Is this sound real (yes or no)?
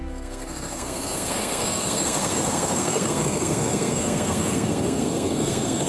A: no